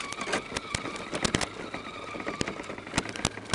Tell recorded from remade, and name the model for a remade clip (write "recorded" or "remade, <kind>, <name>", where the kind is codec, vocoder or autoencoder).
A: recorded